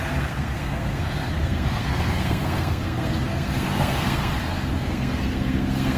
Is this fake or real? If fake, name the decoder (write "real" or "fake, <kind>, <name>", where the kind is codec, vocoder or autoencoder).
fake, codec, SNAC